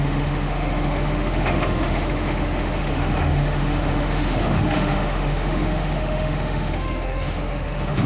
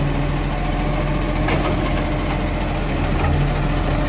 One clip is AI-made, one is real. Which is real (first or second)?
second